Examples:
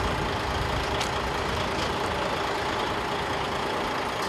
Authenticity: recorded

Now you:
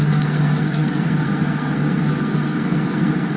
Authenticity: remade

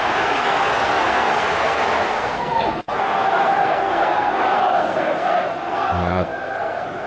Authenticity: remade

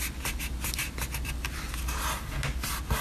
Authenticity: recorded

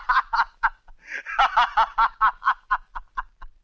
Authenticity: recorded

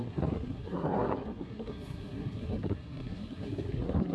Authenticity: remade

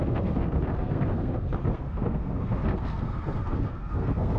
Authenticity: remade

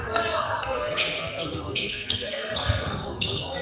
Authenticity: remade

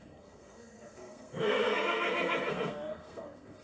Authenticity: remade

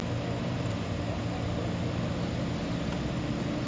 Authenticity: recorded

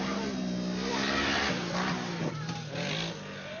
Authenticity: recorded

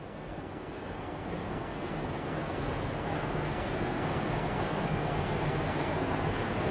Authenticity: remade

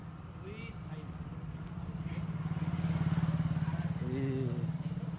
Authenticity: recorded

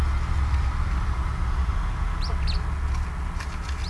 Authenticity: recorded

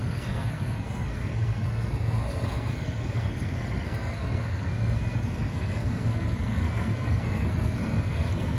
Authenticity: remade